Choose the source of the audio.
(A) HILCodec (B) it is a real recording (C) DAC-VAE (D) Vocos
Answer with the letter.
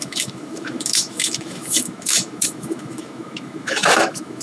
C